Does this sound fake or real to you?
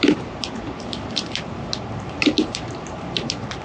fake